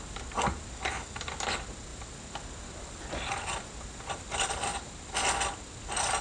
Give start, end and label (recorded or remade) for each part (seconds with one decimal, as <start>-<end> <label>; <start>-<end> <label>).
0.0-6.2 recorded